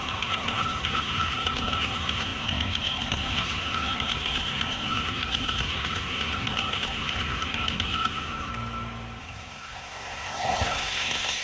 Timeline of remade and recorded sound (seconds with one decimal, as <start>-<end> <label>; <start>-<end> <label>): 0.0-8.5 remade; 8.5-9.2 recorded; 9.2-11.4 remade